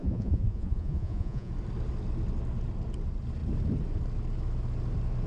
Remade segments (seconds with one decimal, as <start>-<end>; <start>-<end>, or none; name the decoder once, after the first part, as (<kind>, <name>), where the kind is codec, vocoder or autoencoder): 0.0-1.5 (vocoder, Vocos)